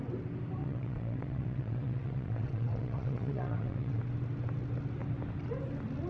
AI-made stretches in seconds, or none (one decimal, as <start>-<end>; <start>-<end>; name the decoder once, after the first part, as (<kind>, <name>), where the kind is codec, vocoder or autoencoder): 0.6-4.0 (vocoder, WaveNeXt)